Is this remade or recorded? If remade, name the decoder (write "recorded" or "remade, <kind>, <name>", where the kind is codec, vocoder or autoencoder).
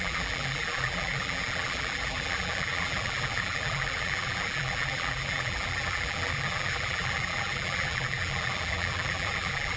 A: remade, vocoder, BigVGAN v2